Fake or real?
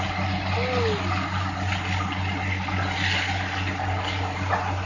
real